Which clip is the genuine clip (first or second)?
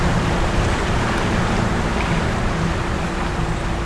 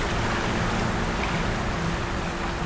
second